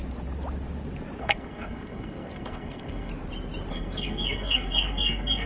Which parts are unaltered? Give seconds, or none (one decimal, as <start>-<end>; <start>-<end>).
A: 0.0-1.2; 3.1-3.7